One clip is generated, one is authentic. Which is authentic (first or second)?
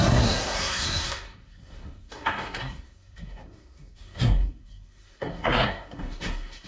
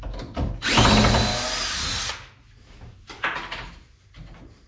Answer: second